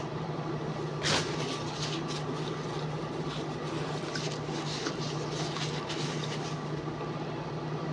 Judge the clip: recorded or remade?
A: recorded